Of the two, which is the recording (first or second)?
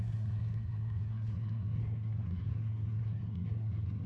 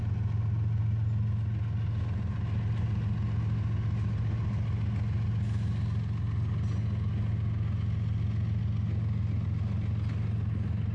second